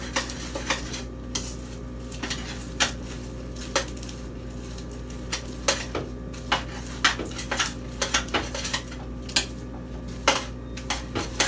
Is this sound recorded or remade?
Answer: recorded